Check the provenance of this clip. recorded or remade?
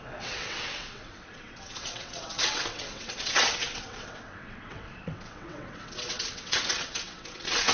remade